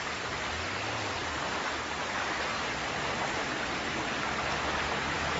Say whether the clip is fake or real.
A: real